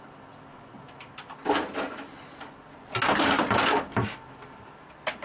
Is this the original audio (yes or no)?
yes